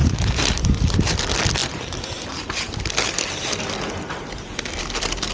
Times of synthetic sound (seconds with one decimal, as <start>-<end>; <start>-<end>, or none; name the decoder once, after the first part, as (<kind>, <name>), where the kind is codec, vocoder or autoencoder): 0.0-1.1 (vocoder, BigVGAN v2)